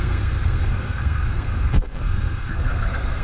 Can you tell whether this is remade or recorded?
remade